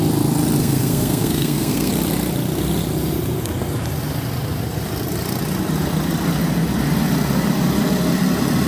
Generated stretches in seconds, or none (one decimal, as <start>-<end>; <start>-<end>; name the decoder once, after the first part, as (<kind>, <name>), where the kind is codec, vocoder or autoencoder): 0.6-1.9 (codec, SNAC)